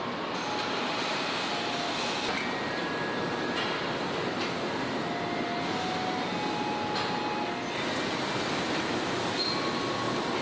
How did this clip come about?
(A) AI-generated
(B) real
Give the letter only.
B